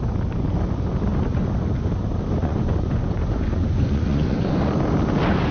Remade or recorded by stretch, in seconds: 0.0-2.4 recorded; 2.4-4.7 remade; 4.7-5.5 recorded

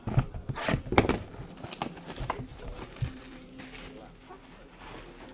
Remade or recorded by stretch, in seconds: 0.0-2.5 recorded; 2.5-3.6 remade; 3.6-5.3 recorded

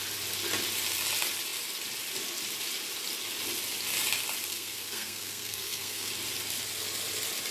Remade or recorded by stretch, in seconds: 0.0-4.5 recorded; 4.5-6.1 remade; 6.1-7.5 recorded

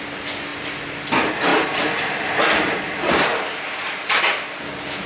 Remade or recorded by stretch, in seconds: 0.0-1.5 recorded; 1.5-2.4 remade; 2.4-3.3 recorded; 3.3-4.2 remade; 4.2-5.1 recorded

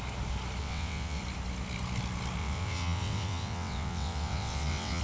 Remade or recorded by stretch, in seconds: 0.0-0.6 recorded; 0.6-1.2 remade; 1.2-2.4 recorded; 2.4-5.0 remade

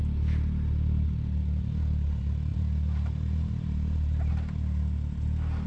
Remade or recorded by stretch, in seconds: 0.0-2.5 recorded; 2.5-4.3 remade; 4.3-5.7 recorded

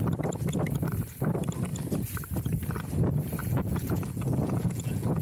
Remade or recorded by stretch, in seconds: 0.0-3.4 recorded; 3.4-5.2 remade